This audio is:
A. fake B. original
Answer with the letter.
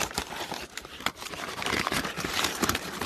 A